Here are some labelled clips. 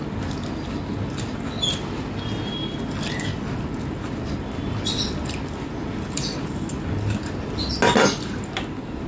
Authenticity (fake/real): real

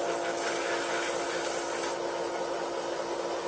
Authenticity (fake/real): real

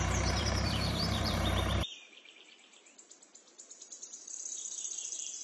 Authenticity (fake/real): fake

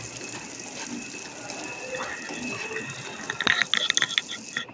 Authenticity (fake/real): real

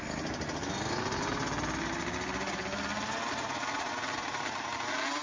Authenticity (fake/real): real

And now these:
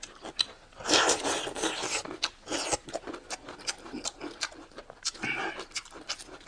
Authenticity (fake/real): real